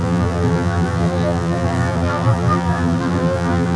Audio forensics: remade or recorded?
remade